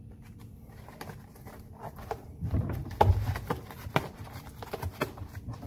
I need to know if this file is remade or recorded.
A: remade